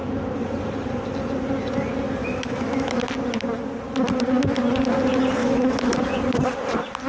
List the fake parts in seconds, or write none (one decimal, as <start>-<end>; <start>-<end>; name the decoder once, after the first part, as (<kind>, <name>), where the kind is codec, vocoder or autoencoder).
2.2-3.1 (autoencoder, DAC-VAE); 5.4-6.0